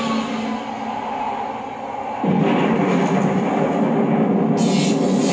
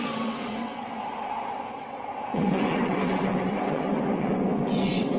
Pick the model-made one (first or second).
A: second